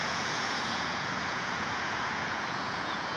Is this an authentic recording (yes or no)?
no